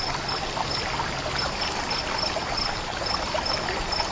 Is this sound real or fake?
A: real